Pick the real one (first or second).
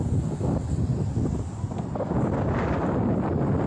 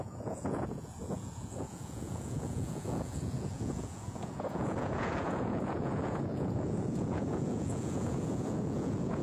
first